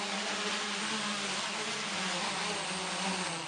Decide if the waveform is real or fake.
real